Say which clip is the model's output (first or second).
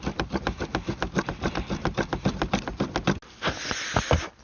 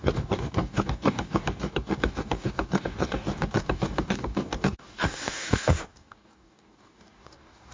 second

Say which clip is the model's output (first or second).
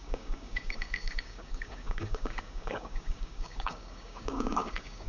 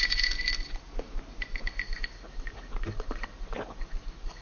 first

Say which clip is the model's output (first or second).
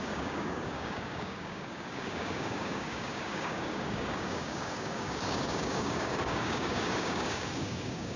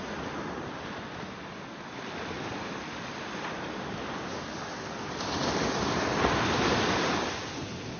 first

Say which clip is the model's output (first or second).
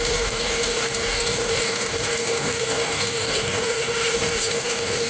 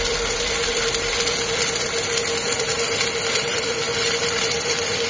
first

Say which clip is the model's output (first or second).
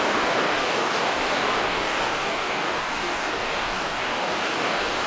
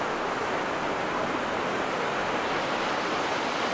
first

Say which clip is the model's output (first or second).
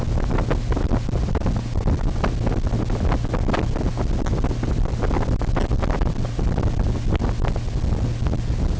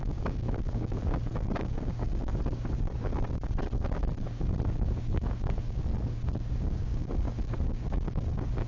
second